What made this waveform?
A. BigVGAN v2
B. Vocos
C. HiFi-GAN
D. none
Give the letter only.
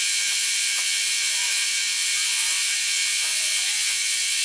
B